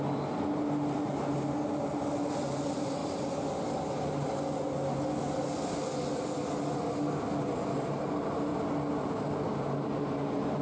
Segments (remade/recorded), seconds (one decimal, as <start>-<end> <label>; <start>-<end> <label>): 0.0-10.6 recorded